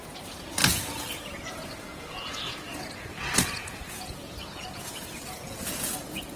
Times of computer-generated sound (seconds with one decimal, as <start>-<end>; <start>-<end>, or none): 0.0-6.4